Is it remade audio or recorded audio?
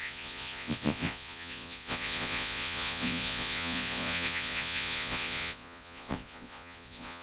remade